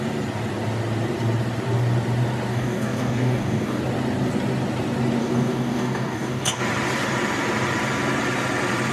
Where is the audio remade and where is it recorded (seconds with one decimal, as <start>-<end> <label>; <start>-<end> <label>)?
0.0-2.5 recorded; 2.5-3.8 remade; 3.8-5.2 recorded; 5.2-6.6 remade; 6.6-8.9 recorded